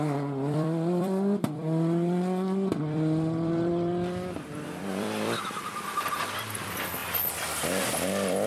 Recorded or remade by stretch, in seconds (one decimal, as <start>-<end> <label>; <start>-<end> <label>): 0.0-8.5 remade